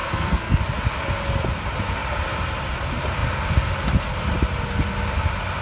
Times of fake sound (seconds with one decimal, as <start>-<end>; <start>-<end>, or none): 0.0-0.6